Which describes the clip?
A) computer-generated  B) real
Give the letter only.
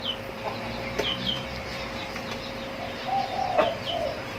B